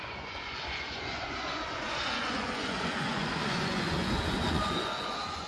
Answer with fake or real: fake